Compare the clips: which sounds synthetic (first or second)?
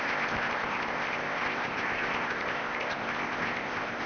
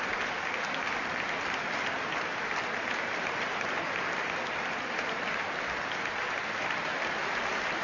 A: first